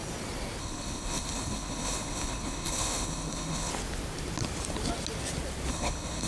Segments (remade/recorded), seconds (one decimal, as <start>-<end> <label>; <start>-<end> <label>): 0.0-0.6 recorded; 0.6-3.7 remade; 3.7-5.7 recorded; 5.7-6.3 remade